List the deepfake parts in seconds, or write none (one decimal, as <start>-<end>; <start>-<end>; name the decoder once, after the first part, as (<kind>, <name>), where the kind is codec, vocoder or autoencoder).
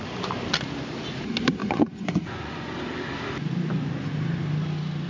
1.6-2.8 (vocoder, Vocos)